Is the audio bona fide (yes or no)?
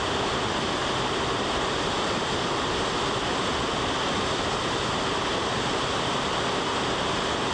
yes